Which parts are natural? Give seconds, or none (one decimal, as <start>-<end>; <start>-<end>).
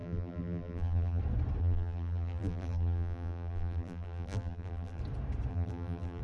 1.2-1.6; 5.0-5.5